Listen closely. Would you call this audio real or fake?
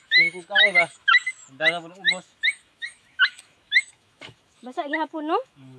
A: fake